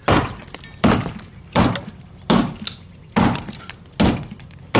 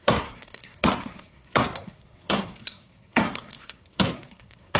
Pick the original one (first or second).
first